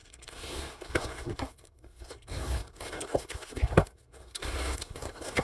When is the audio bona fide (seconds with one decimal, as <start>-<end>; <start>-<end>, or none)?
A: none